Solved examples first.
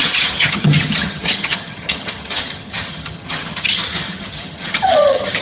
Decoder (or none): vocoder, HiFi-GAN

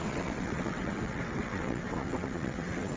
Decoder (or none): vocoder, WaveNeXt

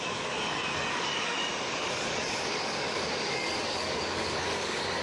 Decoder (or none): codec, DAC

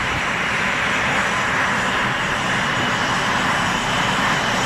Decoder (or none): vocoder, BigVGAN v2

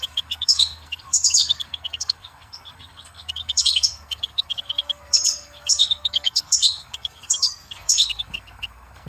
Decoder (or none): codec, SNAC